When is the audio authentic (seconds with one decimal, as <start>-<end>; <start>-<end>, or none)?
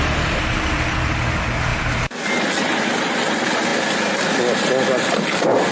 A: 0.0-5.7